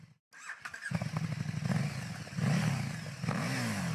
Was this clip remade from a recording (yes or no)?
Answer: no